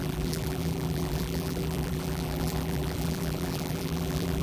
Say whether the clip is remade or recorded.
remade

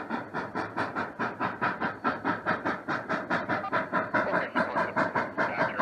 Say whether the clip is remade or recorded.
remade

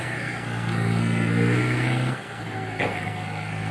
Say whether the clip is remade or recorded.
remade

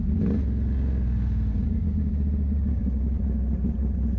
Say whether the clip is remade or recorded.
recorded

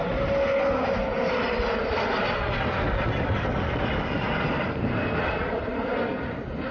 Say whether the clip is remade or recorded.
recorded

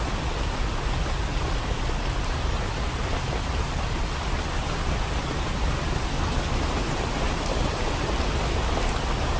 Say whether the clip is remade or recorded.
recorded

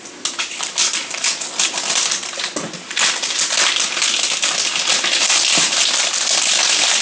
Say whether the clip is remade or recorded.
recorded